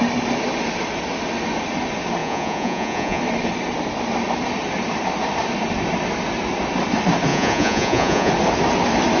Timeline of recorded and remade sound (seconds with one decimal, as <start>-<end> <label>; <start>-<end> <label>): 0.0-2.2 recorded; 2.2-3.2 remade; 3.2-7.3 recorded; 7.3-8.3 remade; 8.3-9.2 recorded